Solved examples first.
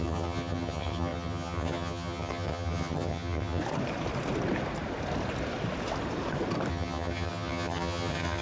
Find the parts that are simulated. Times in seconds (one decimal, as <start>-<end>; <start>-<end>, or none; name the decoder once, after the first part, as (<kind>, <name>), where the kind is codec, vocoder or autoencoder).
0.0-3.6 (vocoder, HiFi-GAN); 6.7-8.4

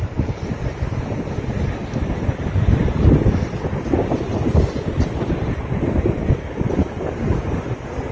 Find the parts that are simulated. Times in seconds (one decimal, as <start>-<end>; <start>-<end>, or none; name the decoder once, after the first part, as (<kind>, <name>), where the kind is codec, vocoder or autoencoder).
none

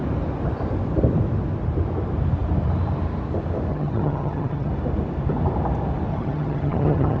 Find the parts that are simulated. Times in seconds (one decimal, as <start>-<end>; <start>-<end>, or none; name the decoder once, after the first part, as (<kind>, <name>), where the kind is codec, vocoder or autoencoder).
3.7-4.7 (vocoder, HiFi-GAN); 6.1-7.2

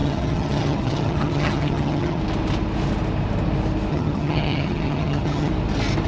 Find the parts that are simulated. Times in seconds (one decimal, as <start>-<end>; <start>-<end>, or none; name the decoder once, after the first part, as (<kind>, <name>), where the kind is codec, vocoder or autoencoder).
0.0-2.2 (vocoder, HiFi-GAN); 3.9-5.5